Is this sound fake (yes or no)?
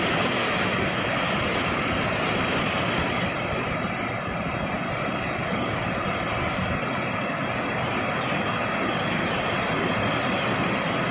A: no